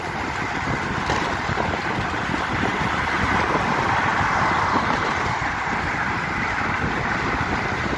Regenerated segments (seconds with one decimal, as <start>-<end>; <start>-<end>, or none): none

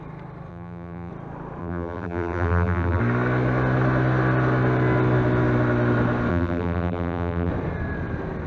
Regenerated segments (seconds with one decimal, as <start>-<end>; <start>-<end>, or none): 0.5-1.1; 1.6-3.0; 6.3-7.5

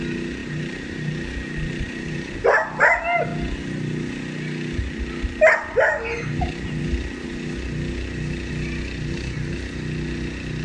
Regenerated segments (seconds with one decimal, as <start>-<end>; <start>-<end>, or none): 0.4-2.4

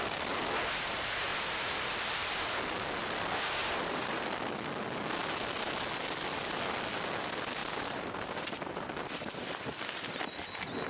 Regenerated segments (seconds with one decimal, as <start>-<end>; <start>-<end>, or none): 1.3-2.2; 3.6-4.3; 7.6-9.5

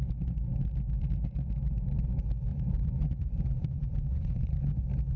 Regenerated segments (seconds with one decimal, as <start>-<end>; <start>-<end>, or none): 2.5-4.8